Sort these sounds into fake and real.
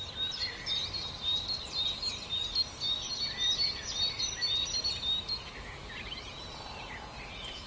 real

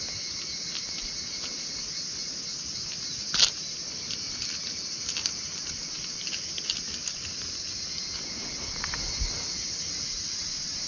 real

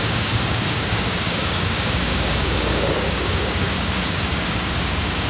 fake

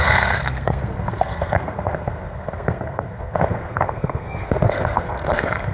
fake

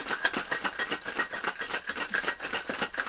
real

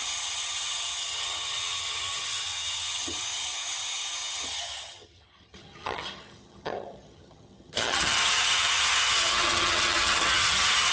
fake